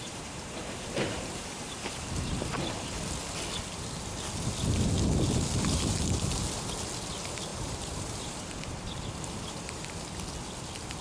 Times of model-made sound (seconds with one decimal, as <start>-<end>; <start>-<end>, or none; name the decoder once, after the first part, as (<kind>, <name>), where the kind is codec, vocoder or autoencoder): 0.0-2.5 (vocoder, BigVGAN v2); 7.5-9.9

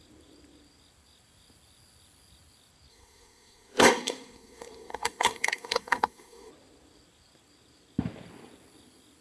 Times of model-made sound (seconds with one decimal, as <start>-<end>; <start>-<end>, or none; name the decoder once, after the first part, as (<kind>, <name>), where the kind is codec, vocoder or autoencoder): 2.9-6.5 (codec, SNAC)